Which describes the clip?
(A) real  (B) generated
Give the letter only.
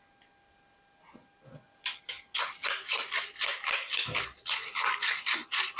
A